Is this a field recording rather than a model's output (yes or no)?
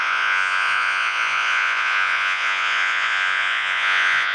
no